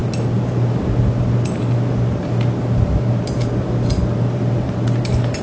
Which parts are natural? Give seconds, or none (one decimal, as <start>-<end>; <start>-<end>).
0.0-5.4